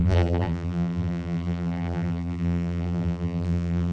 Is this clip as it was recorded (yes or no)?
no